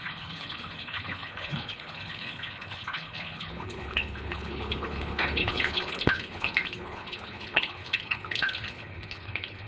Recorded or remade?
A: remade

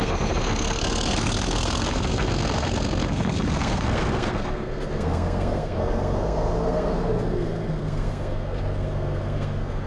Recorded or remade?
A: remade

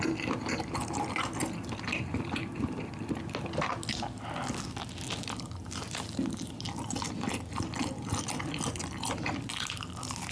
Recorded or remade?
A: recorded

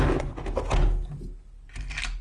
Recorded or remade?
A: recorded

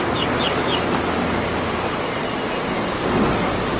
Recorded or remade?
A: recorded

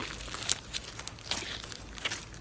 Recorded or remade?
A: recorded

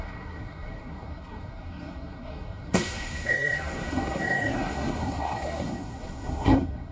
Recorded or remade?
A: remade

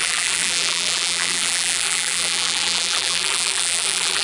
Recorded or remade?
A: remade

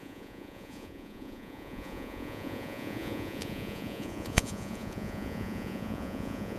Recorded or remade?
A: remade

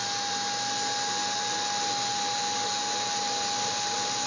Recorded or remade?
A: recorded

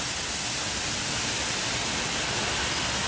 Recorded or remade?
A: recorded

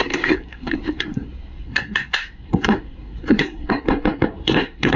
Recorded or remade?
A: remade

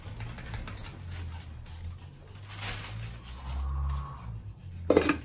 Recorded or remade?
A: recorded